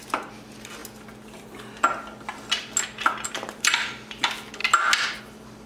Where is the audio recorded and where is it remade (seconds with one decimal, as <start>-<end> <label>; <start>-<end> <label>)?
0.0-0.8 remade; 0.8-3.3 recorded; 3.3-4.6 remade; 4.6-5.2 recorded; 5.2-5.7 remade